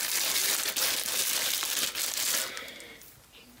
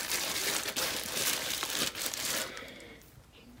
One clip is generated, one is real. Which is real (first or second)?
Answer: first